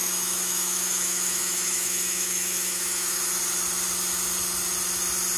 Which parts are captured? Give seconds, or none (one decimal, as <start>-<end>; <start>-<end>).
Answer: 3.2-5.4